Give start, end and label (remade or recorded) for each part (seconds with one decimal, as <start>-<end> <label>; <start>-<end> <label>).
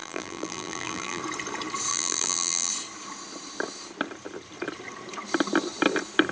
0.0-1.2 remade; 1.2-1.9 recorded; 1.9-2.7 remade; 2.7-6.3 recorded